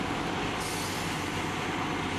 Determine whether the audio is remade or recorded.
recorded